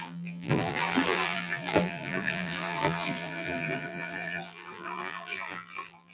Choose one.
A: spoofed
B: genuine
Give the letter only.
A